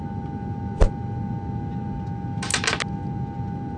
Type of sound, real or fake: real